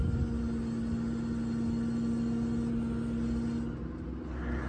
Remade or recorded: recorded